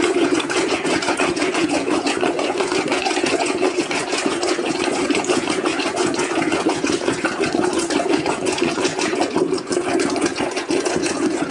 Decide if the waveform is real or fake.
fake